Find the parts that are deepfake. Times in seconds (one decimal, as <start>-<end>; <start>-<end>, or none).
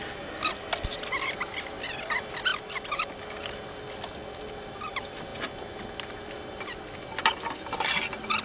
2.5-3.2